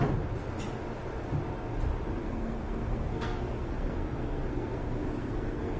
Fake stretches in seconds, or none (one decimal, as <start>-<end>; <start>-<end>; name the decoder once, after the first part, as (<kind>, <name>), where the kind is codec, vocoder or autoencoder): 2.2-5.8 (codec, SNAC)